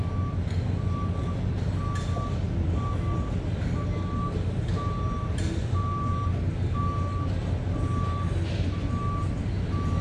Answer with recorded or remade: recorded